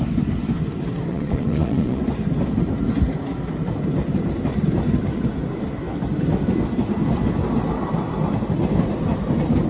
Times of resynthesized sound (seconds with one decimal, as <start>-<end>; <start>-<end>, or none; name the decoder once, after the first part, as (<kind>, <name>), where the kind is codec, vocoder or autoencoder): 1.1-2.0 (vocoder, Vocos)